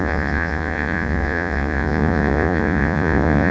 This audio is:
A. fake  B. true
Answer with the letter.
A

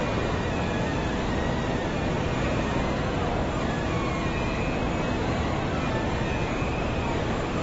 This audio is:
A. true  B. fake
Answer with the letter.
A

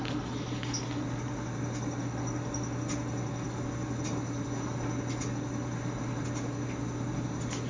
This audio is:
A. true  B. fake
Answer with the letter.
A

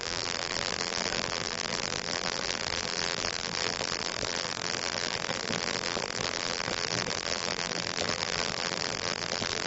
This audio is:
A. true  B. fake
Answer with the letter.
B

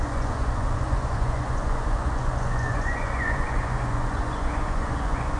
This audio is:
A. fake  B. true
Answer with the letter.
A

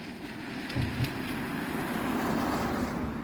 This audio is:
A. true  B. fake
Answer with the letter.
A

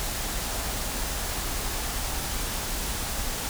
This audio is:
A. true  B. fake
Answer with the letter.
A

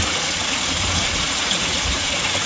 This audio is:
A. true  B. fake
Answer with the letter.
B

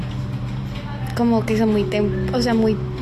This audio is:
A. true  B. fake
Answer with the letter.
A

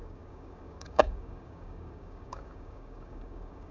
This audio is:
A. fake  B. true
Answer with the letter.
A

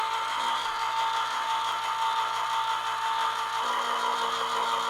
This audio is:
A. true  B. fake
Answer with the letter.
A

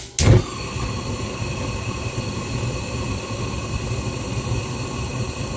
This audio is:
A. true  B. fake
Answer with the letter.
A